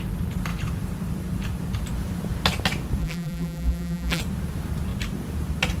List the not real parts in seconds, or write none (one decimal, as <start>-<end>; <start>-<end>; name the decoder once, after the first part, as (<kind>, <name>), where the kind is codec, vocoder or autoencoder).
3.0-4.2 (vocoder, BigVGAN v2)